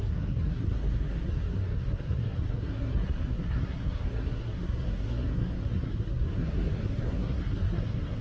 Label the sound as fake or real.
fake